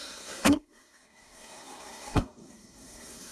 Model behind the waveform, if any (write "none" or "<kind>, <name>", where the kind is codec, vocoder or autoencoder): codec, SNAC